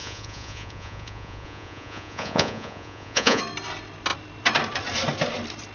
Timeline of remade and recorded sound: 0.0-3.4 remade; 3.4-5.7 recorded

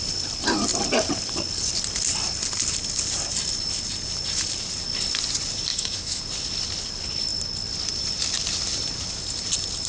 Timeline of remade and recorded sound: 0.0-5.7 recorded; 5.7-6.2 remade; 6.2-9.9 recorded

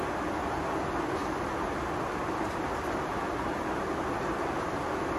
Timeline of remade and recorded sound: 0.0-5.2 recorded

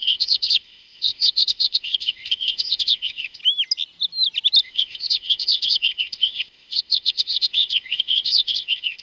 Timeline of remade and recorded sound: 0.0-3.4 remade; 3.4-4.6 recorded; 4.6-9.0 remade

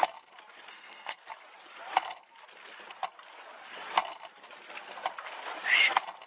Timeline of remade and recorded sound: 0.0-0.7 recorded; 0.7-1.2 remade; 1.2-6.3 recorded